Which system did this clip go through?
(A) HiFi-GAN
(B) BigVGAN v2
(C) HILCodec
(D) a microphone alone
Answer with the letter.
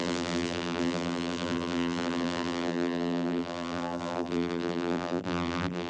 B